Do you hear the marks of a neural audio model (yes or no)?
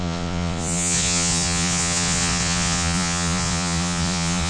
yes